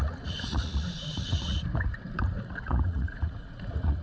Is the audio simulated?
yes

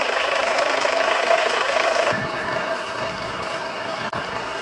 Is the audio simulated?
yes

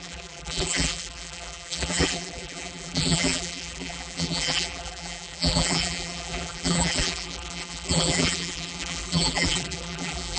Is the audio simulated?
yes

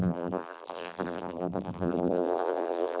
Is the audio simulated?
yes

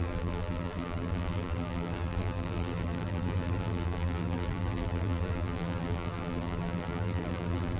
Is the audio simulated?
yes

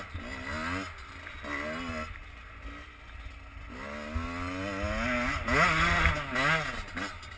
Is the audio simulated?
no